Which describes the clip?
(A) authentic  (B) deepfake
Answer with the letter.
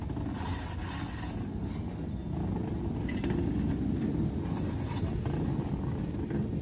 A